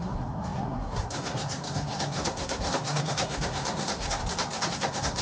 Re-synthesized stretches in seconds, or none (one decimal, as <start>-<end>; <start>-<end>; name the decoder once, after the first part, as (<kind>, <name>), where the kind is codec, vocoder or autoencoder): 0.0-4.2 (codec, SNAC); 4.7-5.2